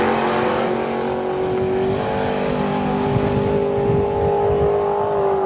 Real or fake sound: real